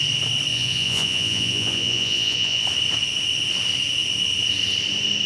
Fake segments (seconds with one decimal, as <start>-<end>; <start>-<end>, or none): 0.5-2.6